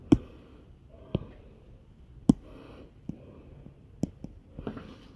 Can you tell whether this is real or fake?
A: real